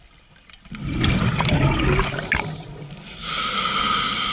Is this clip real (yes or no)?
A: yes